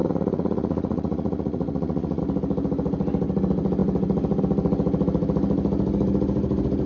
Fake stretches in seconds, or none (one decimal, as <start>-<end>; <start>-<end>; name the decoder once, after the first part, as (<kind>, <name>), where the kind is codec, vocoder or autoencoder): 0.0-2.2 (vocoder, Vocos)